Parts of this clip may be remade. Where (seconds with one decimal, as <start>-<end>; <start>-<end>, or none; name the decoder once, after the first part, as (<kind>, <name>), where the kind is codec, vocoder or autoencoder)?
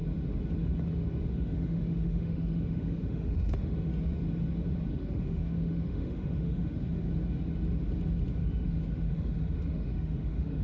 1.3-3.9 (autoencoder, DAC-VAE); 4.9-7.1; 8.4-10.6